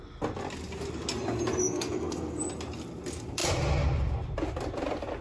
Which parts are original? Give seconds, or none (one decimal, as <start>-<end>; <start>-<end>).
0.0-1.6; 2.4-5.2